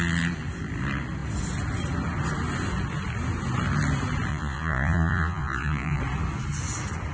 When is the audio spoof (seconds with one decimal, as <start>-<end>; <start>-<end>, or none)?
4.3-6.0